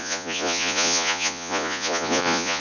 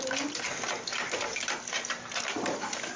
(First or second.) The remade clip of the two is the first